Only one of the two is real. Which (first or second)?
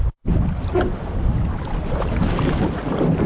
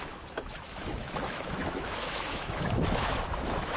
first